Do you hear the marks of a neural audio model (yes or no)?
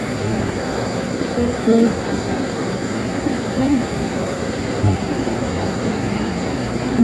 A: yes